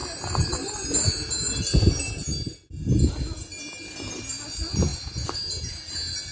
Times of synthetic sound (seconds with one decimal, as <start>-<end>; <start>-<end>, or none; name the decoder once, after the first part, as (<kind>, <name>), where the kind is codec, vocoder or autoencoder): none